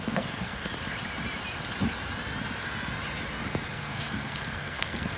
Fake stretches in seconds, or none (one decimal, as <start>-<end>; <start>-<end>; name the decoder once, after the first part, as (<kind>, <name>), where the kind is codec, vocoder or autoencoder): 0.0-0.7 (codec, SNAC); 3.7-5.2